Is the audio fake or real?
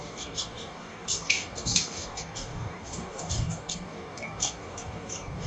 fake